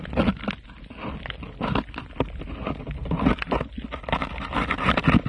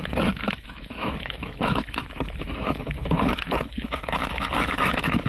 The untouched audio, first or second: first